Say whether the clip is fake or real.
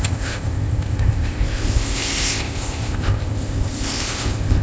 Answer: fake